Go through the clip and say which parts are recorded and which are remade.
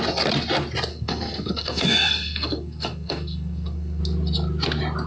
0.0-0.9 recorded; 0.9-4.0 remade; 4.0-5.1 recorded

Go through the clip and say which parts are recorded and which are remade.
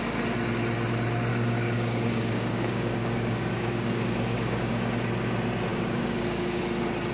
0.0-1.3 recorded; 1.3-5.1 remade; 5.1-5.7 recorded; 5.7-6.6 remade; 6.6-7.1 recorded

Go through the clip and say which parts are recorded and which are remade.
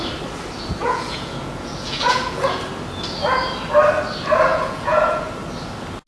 0.0-0.8 recorded; 0.8-2.6 remade; 2.6-4.5 recorded; 4.5-5.2 remade; 5.2-6.1 recorded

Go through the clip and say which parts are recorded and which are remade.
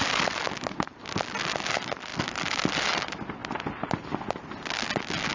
0.0-1.0 remade; 1.0-2.1 recorded; 2.1-2.9 remade; 2.9-5.3 recorded